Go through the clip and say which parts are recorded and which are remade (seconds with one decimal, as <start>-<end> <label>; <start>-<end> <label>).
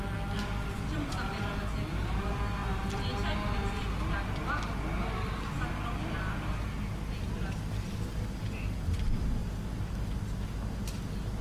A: 0.0-2.6 recorded; 2.6-3.1 remade; 3.1-11.4 recorded